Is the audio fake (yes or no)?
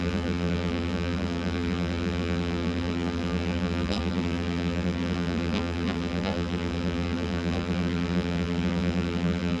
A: yes